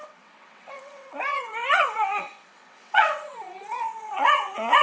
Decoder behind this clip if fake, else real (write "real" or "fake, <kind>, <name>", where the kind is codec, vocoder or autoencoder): fake, vocoder, WaveNeXt